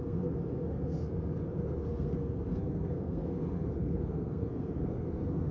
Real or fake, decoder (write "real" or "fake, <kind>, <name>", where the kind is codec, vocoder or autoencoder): fake, codec, SNAC